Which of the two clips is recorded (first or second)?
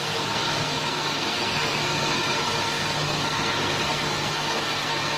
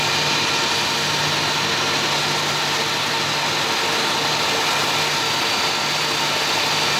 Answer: second